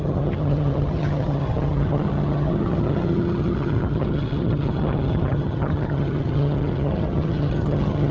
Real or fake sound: fake